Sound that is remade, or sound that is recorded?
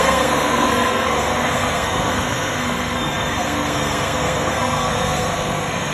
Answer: remade